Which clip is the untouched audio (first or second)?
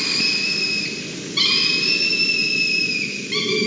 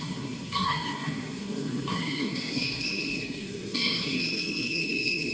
first